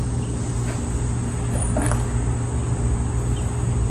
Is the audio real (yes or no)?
yes